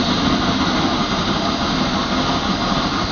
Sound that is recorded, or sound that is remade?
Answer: recorded